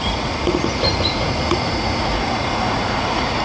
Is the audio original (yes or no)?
no